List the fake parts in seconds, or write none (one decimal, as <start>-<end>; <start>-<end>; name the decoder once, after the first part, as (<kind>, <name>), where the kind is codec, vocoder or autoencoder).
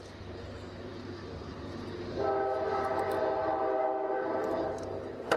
none